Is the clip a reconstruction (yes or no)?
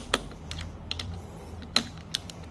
yes